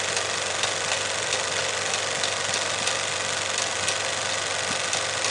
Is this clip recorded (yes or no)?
yes